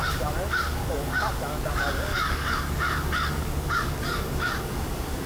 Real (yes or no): no